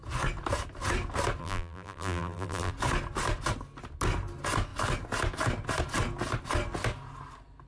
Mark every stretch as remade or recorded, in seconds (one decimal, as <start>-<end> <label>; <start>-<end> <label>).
0.0-1.4 recorded; 1.4-2.7 remade; 2.7-7.7 recorded